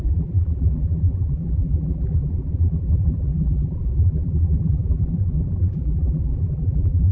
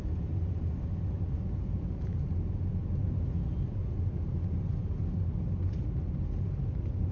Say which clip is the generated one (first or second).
first